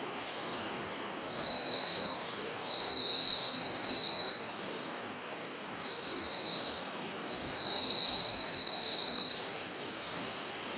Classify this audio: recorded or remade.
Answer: remade